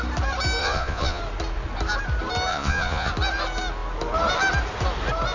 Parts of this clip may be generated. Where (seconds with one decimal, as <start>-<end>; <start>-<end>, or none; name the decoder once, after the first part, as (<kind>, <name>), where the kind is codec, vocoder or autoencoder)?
0.6-1.2 (vocoder, Vocos); 2.5-3.1